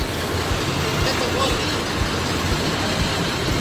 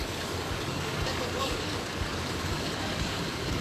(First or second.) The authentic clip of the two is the first